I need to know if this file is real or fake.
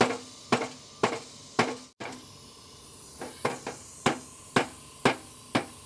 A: real